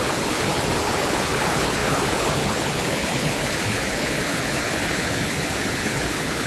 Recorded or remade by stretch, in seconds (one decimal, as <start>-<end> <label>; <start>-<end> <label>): 0.0-6.5 remade